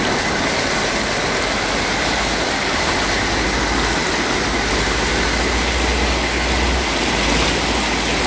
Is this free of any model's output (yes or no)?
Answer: yes